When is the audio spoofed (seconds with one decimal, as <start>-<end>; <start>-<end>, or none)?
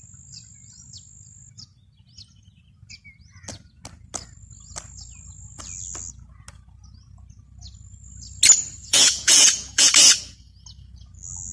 8.8-9.9